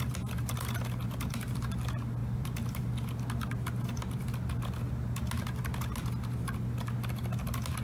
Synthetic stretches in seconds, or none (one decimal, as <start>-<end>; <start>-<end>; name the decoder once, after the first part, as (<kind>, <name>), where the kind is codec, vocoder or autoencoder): none